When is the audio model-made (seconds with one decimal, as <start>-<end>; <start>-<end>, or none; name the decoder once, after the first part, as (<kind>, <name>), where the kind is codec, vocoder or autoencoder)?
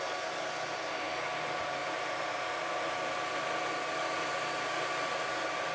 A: none